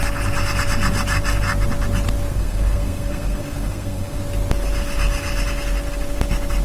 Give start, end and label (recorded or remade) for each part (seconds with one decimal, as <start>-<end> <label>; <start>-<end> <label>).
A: 0.0-2.3 recorded; 2.3-4.2 remade; 4.2-6.6 recorded